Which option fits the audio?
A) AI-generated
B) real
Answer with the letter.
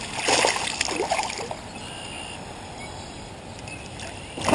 B